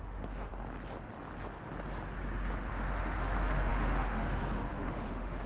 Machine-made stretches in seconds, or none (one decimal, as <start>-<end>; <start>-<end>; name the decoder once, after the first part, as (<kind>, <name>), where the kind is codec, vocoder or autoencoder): 0.0-0.5 (autoencoder, DAC-VAE); 2.7-5.5